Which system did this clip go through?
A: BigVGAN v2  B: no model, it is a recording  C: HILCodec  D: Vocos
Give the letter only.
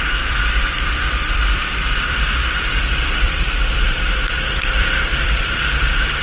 A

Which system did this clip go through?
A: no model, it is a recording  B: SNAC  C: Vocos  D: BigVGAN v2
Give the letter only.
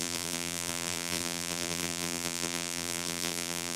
D